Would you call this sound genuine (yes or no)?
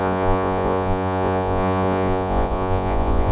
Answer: no